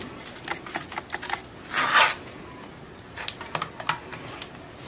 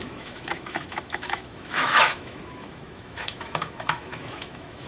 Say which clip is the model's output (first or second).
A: second